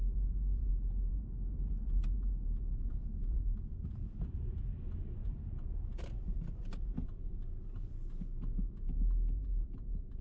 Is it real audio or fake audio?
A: fake